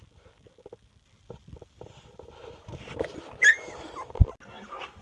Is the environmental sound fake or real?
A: fake